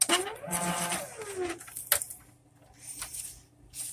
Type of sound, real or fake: real